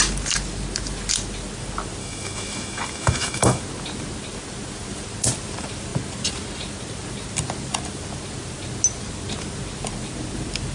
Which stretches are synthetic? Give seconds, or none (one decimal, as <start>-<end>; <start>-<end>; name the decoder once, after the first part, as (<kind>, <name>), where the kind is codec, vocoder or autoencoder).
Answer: 2.0-3.6 (autoencoder, DAC-VAE)